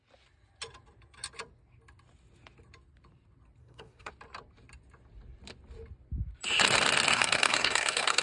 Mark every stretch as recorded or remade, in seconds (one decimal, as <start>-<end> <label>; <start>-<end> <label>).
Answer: 0.0-3.6 recorded; 3.6-4.1 remade; 4.1-7.1 recorded; 7.1-8.2 remade